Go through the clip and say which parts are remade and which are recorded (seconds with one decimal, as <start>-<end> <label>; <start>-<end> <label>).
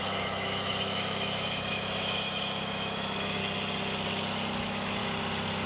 0.0-3.4 remade; 3.4-4.6 recorded; 4.6-5.0 remade; 5.0-5.7 recorded